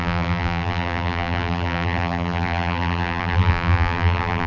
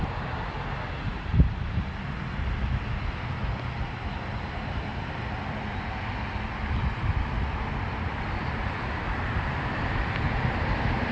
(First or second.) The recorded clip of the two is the second